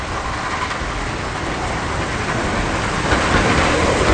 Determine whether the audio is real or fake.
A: real